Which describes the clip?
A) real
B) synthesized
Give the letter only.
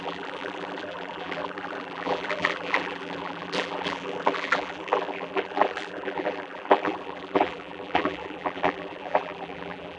B